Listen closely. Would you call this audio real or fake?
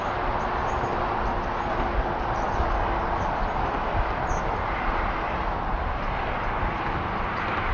real